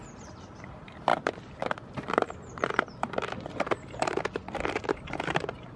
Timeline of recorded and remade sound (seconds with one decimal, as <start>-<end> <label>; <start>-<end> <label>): 0.0-1.1 remade; 1.1-1.8 recorded; 1.8-5.8 remade